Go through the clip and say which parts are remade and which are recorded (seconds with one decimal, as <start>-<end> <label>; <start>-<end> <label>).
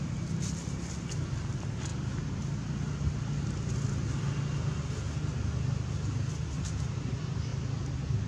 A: 0.0-8.3 recorded